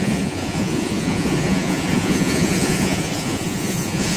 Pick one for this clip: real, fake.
fake